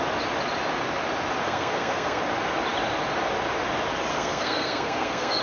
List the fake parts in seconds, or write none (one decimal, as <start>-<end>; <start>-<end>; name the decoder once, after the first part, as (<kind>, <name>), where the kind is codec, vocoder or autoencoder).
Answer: 1.4-2.2 (codec, SNAC); 4.1-5.4